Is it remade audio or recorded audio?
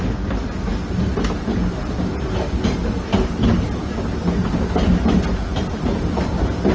recorded